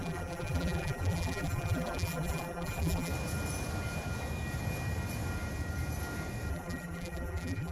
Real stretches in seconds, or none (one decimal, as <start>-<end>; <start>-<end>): 3.1-6.5